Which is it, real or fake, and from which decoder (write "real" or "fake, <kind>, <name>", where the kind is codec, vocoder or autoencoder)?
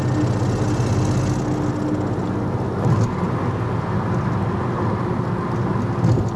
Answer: real